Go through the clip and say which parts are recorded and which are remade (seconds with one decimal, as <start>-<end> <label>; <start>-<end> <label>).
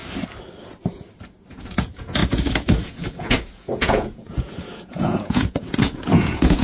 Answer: 0.0-1.5 recorded; 1.5-6.6 remade